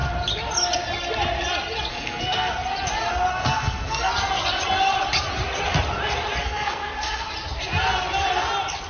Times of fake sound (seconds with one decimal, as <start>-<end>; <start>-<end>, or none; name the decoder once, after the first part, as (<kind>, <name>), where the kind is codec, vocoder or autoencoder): 1.9-2.5 (codec, SNAC); 3.3-4.1; 6.4-7.3

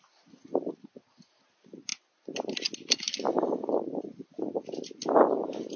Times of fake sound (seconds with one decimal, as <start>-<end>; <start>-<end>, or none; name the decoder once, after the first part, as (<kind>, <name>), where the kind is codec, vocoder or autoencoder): none

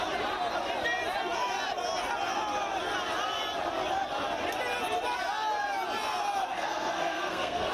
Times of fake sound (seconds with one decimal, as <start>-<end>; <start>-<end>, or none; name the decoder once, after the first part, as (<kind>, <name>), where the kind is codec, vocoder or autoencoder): 6.4-7.7 (codec, SNAC)